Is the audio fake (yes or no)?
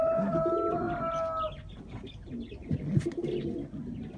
no